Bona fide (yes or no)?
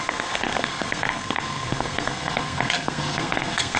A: no